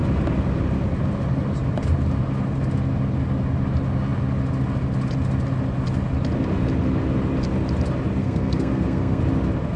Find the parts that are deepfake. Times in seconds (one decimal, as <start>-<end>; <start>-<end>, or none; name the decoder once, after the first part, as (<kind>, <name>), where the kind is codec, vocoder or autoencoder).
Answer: 8.2-9.2 (codec, SNAC)